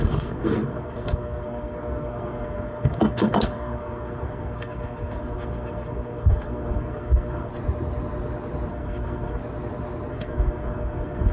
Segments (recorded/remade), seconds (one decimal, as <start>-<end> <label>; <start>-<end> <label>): 0.0-7.5 remade; 7.5-8.7 recorded; 8.7-9.4 remade; 9.4-10.1 recorded; 10.1-11.3 remade